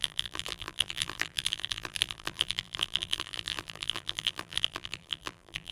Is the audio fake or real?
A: fake